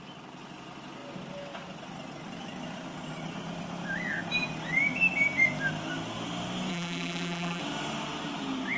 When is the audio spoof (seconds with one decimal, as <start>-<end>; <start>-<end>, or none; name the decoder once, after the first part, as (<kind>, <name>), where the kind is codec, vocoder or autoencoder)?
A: 6.7-7.6 (vocoder, BigVGAN v2)